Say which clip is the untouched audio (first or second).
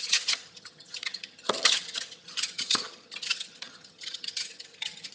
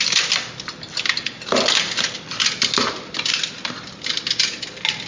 second